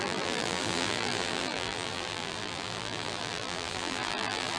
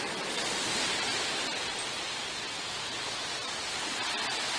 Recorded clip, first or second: second